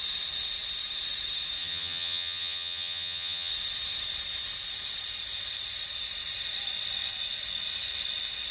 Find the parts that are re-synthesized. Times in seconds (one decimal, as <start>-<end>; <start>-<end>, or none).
1.6-3.5